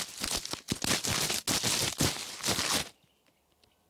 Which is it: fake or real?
real